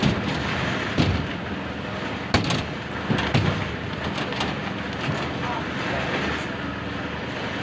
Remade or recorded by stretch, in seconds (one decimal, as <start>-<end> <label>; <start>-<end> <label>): 0.0-7.6 recorded